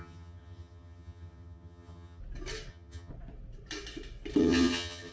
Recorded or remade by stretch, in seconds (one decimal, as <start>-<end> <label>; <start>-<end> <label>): 0.0-2.2 remade; 2.2-2.7 recorded; 2.7-3.1 remade; 3.1-4.4 recorded; 4.4-5.1 remade